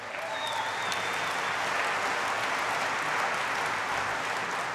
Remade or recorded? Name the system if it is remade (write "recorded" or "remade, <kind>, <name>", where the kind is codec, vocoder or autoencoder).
recorded